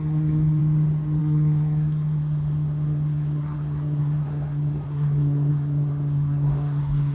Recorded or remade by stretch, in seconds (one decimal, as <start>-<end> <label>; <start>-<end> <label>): 0.0-0.6 remade; 0.6-1.2 recorded; 1.2-7.1 remade